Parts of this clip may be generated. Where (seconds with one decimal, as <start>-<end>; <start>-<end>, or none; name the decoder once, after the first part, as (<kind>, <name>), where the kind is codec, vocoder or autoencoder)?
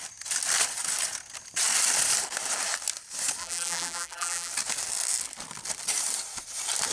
3.4-4.5 (vocoder, BigVGAN v2)